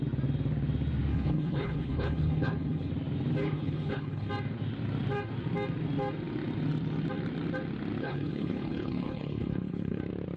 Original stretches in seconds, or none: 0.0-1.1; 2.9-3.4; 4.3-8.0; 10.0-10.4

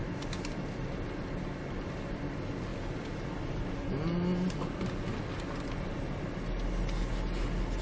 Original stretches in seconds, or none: 0.0-7.8

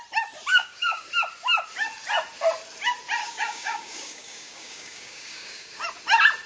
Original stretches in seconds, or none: 0.0-0.5; 1.1-3.2; 5.8-6.5

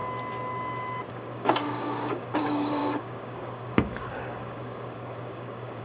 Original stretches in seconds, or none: 0.0-1.1

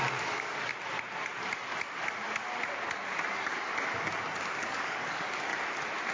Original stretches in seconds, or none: 0.7-3.3; 3.7-4.5; 5.5-6.1

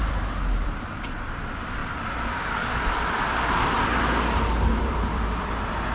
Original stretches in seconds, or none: 1.8-4.8